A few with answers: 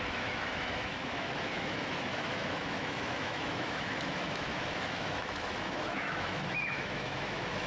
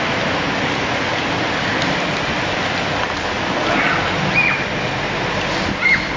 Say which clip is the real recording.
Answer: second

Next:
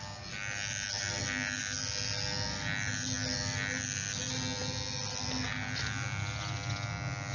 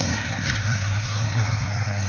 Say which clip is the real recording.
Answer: first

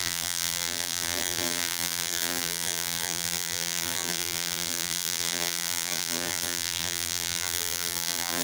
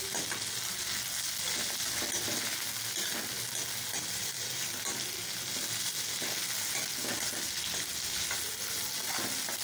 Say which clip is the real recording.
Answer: second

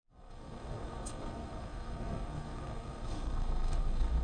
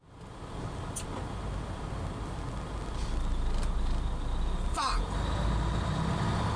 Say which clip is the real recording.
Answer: second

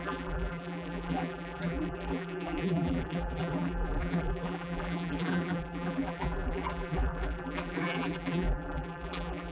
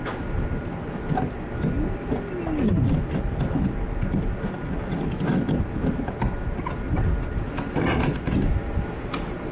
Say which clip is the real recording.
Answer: second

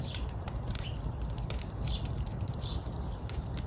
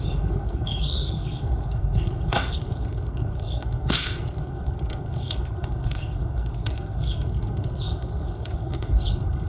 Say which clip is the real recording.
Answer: first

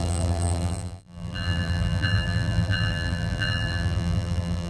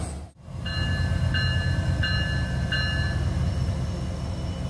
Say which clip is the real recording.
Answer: second